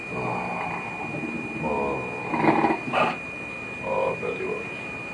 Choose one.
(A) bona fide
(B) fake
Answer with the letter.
A